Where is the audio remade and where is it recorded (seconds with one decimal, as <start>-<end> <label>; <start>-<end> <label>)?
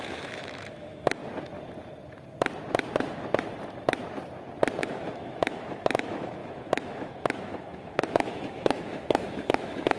0.0-1.2 remade; 1.2-4.8 recorded; 4.8-10.0 remade